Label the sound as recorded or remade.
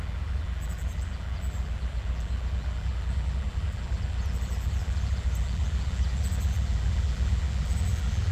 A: remade